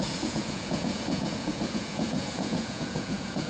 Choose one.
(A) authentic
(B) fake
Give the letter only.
B